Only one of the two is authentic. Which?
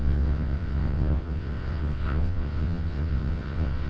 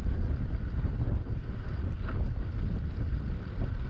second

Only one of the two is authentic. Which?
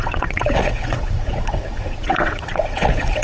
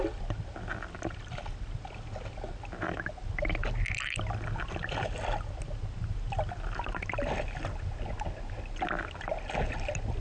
second